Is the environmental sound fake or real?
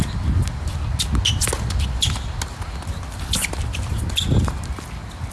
real